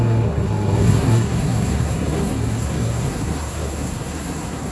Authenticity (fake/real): fake